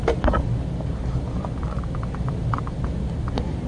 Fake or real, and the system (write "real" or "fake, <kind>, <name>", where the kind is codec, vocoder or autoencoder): real